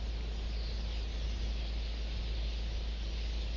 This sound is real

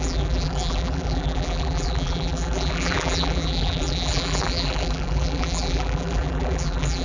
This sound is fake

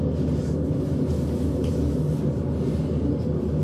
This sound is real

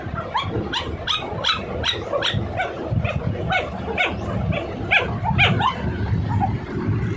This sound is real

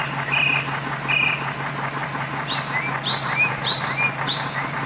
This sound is real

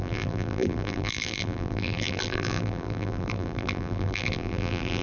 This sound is fake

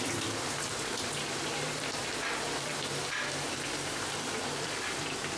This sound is fake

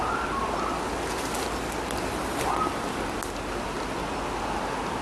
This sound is real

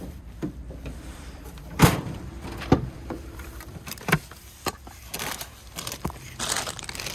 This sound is fake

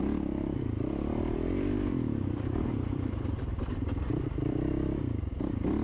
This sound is fake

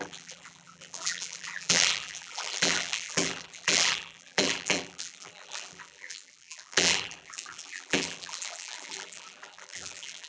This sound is fake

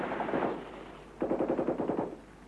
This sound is real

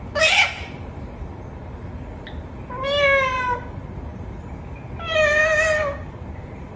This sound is real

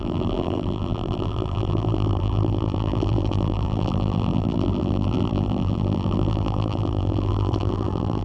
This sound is fake